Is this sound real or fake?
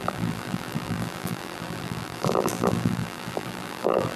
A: fake